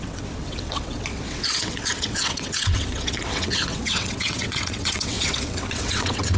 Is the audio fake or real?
fake